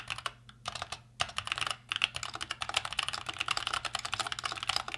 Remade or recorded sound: recorded